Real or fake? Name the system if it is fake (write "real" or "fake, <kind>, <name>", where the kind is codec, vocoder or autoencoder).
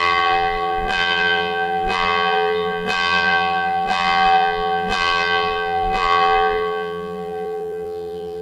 fake, vocoder, BigVGAN v2